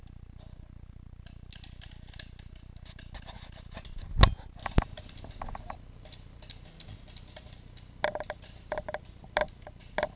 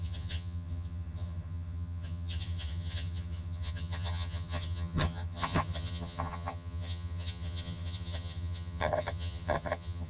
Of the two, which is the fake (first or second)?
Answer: second